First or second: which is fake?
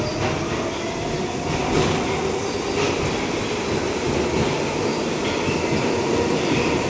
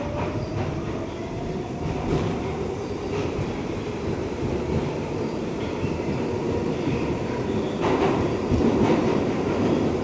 second